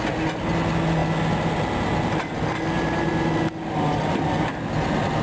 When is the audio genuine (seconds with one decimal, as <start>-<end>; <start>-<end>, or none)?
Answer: 0.0-5.2

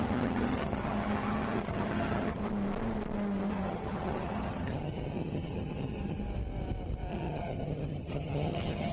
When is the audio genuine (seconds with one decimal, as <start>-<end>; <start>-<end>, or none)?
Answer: 2.4-3.5; 6.2-7.1

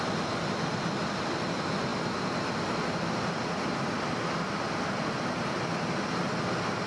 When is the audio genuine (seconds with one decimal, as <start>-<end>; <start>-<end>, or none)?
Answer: 0.0-6.9

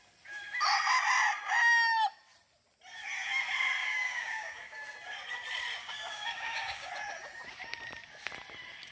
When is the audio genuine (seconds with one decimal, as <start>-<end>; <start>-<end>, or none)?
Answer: 0.0-3.8; 4.8-5.8; 6.9-8.9

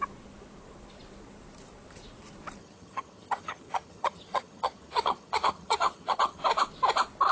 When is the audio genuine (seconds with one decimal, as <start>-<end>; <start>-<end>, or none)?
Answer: 0.0-2.6; 6.4-7.3

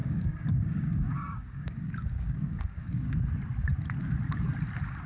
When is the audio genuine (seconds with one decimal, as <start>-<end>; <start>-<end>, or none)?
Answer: 3.1-5.1

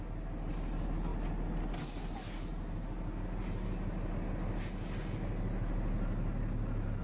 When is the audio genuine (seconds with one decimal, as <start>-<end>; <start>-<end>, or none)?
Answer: 0.0-7.0